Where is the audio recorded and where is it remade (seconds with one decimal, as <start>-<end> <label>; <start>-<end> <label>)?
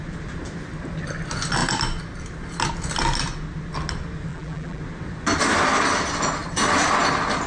0.0-4.3 recorded; 4.3-4.8 remade; 4.8-7.5 recorded